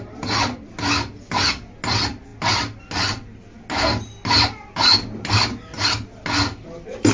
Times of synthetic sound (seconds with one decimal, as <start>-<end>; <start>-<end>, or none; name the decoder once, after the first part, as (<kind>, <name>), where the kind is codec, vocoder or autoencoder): none